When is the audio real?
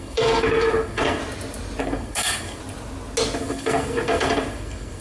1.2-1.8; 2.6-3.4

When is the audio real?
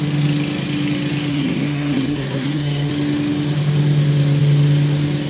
0.0-1.3; 2.9-5.3